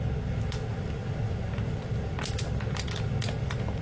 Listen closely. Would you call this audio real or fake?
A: real